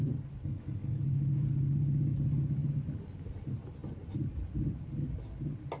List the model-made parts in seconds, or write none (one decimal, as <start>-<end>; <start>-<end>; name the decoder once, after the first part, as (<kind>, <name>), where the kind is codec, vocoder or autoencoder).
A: 0.5-1.0 (codec, DAC)